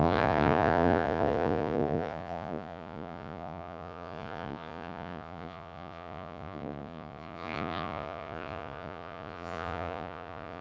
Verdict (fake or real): fake